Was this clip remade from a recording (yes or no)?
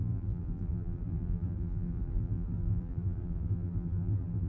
yes